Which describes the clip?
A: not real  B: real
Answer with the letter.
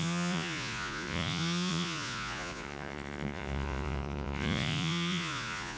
A